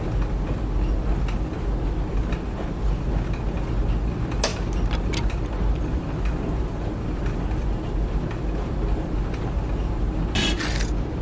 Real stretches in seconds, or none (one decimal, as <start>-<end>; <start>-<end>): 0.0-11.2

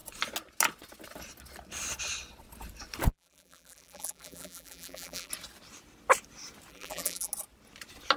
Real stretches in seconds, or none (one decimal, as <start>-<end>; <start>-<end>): 0.0-3.1; 5.3-6.7; 7.3-8.2

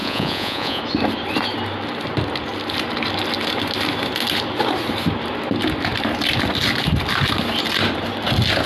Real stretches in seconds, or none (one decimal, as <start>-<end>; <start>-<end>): 0.8-8.7

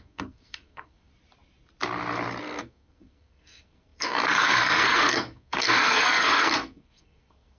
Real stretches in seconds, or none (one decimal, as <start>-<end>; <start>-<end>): 1.1-2.4

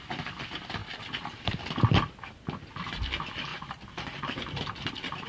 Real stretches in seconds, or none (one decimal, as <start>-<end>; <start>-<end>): 0.0-5.3

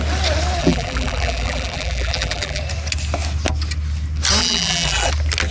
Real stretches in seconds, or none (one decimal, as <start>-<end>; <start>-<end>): 0.0-0.6; 2.6-4.4; 5.1-5.5

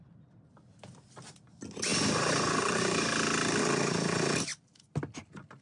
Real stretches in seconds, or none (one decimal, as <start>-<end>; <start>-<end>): 0.0-5.6